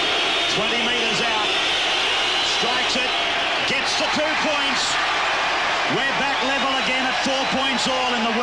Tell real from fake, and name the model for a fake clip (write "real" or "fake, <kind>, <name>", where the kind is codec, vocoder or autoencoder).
real